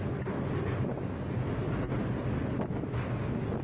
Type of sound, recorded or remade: recorded